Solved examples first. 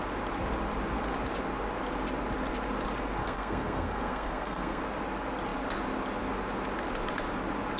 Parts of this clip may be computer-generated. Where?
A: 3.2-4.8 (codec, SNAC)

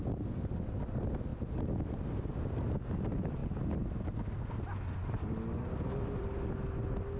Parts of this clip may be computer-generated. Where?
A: none

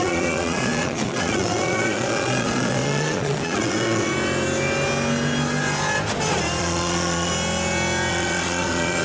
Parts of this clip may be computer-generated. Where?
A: 0.0-4.1 (vocoder, Vocos); 6.6-7.3; 8.1-9.0

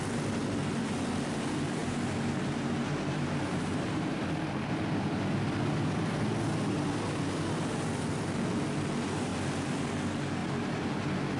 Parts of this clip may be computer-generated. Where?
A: 1.8-4.2 (vocoder, BigVGAN v2); 10.4-11.0

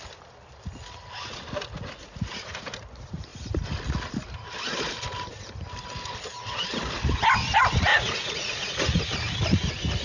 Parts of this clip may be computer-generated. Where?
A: 2.0-2.6 (vocoder, Vocos); 7.9-9.0

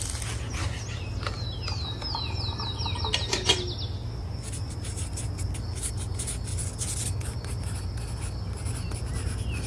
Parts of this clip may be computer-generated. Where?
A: none

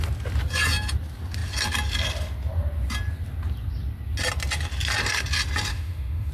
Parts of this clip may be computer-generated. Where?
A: 5.7-6.3 (autoencoder, DAC-VAE)

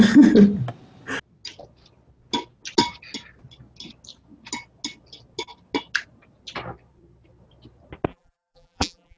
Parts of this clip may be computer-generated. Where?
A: 8.1-9.2 (vocoder, BigVGAN v2)